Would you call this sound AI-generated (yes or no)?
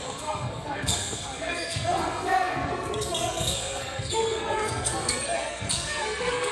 yes